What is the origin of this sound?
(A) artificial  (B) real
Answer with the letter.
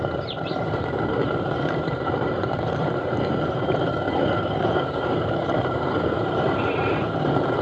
A